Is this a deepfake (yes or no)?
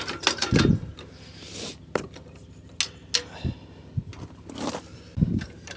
no